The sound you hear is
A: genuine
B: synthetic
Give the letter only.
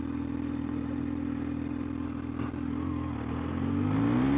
A